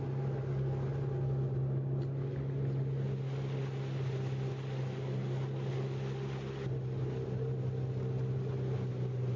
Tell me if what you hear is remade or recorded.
recorded